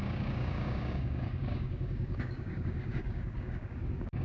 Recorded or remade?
remade